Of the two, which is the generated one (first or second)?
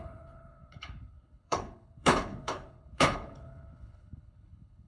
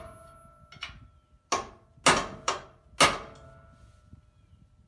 first